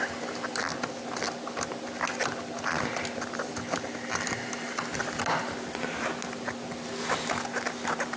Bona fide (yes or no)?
yes